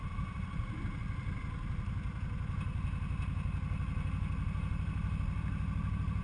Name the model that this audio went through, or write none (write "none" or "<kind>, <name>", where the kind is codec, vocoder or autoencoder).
none